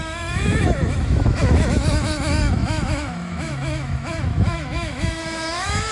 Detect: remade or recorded remade